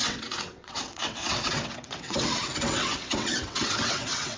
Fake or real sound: fake